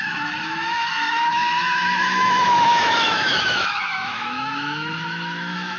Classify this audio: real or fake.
fake